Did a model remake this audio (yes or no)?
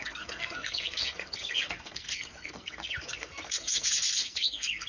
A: yes